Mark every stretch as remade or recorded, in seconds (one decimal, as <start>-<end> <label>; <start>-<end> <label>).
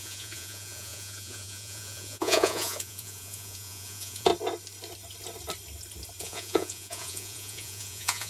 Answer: 0.0-4.3 remade; 4.3-6.2 recorded; 6.2-8.3 remade